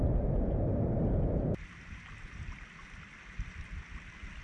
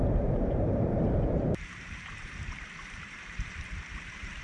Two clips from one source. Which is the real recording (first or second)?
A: first